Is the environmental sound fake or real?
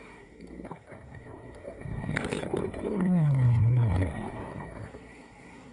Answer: fake